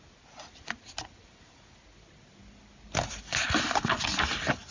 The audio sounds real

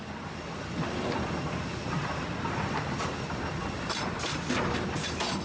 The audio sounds real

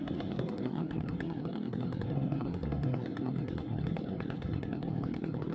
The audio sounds fake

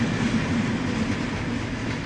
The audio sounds real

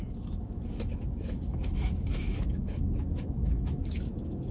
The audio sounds fake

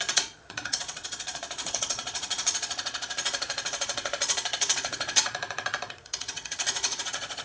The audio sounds fake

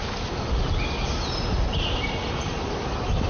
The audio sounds real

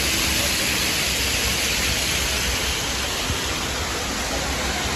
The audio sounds real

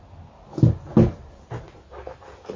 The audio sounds real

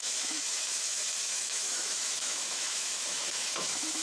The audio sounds fake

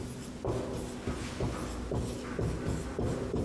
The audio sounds real